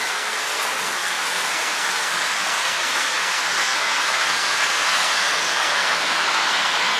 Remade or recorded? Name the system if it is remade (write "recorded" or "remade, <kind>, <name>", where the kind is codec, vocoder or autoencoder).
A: remade, codec, SNAC